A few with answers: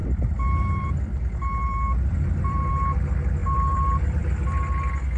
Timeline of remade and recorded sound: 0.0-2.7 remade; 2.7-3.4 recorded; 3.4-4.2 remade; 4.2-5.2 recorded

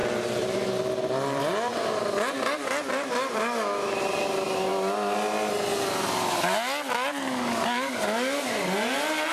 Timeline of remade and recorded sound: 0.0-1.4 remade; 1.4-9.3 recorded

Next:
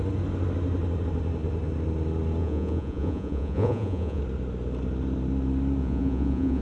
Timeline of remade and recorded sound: 0.0-2.4 recorded; 2.4-4.2 remade; 4.2-5.8 recorded; 5.8-6.6 remade

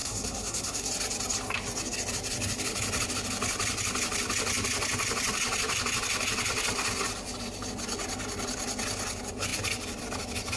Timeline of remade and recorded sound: 0.0-0.9 remade; 0.9-10.6 recorded

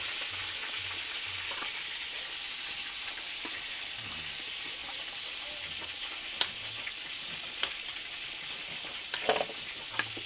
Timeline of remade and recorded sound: 0.0-10.3 recorded

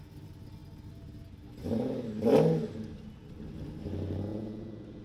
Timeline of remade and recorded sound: 0.0-4.3 recorded; 4.3-5.0 remade

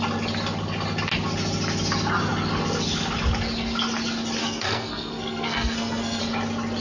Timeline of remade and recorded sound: 0.0-4.4 recorded; 4.4-6.2 remade; 6.2-6.8 recorded

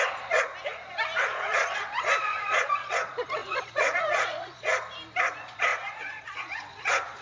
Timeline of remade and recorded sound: 0.0-0.5 remade; 0.5-1.2 recorded; 1.2-4.7 remade; 4.7-5.3 recorded; 5.3-7.2 remade